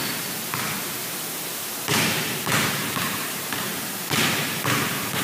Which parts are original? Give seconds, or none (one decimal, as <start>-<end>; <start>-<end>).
0.0-0.7; 3.7-4.3